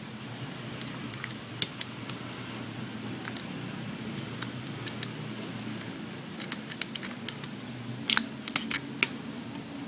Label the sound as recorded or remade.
recorded